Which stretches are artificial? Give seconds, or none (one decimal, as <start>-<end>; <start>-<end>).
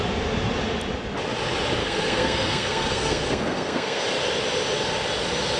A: 1.8-4.0